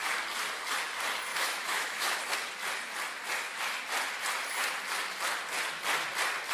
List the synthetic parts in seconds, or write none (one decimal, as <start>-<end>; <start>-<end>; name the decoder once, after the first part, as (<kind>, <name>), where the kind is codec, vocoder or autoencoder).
1.3-2.2 (autoencoder, DAC-VAE)